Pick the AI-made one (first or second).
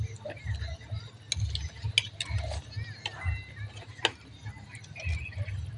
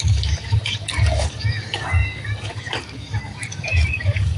second